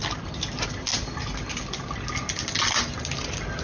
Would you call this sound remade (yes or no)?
no